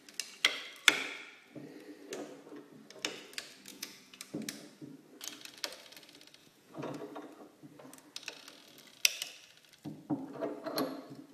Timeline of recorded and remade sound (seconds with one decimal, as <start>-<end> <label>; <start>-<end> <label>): 0.0-3.7 recorded; 3.7-4.2 remade; 4.2-6.4 recorded; 6.4-7.0 remade; 7.0-11.3 recorded